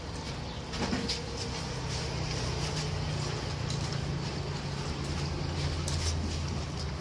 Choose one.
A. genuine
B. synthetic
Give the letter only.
A